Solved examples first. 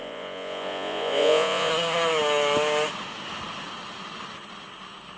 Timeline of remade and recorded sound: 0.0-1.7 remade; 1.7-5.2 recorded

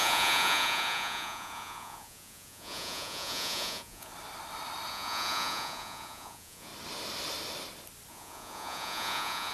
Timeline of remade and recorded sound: 0.0-4.1 remade; 4.1-4.9 recorded; 4.9-6.7 remade; 6.7-8.1 recorded; 8.1-9.5 remade

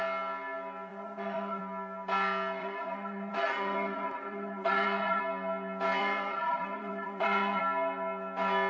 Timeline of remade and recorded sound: 0.0-0.9 recorded; 0.9-1.6 remade; 1.6-2.6 recorded; 2.6-5.2 remade; 5.2-6.0 recorded; 6.0-7.6 remade; 7.6-8.7 recorded

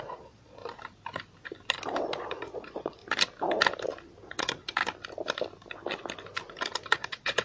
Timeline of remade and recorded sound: 0.0-0.6 remade; 0.6-2.2 recorded; 2.2-3.0 remade; 3.0-4.2 recorded; 4.2-4.8 remade; 4.8-6.9 recorded; 6.9-7.4 remade

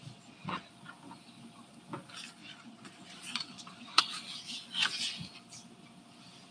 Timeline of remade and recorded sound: 0.0-0.7 remade; 0.7-2.4 recorded; 2.4-4.0 remade; 4.0-6.5 recorded